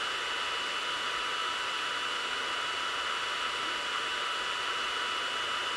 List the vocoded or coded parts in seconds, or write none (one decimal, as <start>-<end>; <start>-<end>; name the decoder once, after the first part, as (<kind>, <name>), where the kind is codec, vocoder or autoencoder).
none